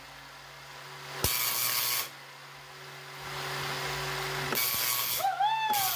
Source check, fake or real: real